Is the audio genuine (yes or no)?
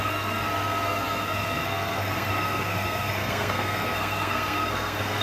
no